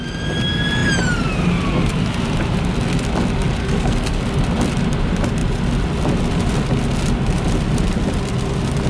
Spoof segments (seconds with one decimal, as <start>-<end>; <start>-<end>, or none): 3.6-4.2